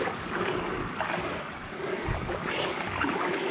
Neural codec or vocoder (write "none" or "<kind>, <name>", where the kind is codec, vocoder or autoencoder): codec, DAC